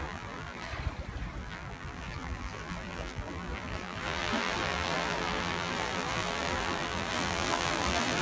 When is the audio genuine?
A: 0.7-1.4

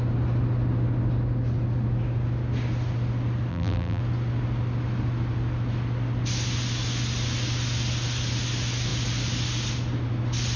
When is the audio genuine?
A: 0.0-3.5; 4.0-10.6

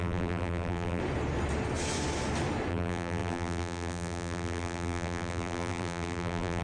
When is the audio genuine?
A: 1.0-2.7